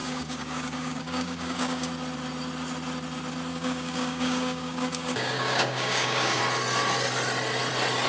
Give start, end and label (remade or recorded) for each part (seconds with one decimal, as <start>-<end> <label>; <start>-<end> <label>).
0.0-1.9 remade; 1.9-3.5 recorded; 3.5-6.4 remade; 6.4-8.1 recorded